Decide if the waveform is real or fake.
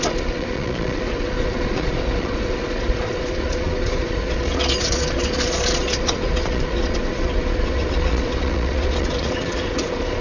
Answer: fake